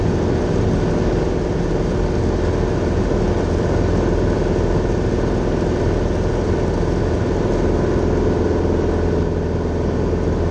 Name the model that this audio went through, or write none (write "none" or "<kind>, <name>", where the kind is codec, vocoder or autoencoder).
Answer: none